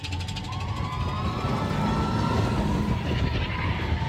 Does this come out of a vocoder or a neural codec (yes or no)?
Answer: no